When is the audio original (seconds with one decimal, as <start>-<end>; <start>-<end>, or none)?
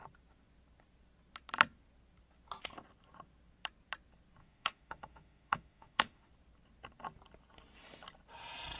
0.0-4.4; 6.3-8.8